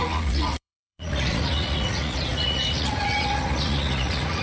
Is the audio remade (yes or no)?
yes